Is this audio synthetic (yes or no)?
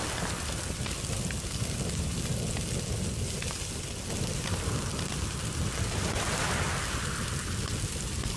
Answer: no